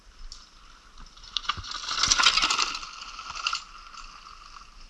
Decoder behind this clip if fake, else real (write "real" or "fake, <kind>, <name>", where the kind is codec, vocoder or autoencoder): real